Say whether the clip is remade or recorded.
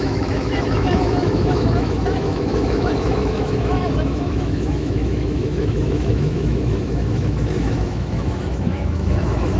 remade